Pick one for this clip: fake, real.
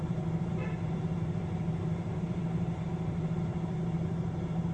fake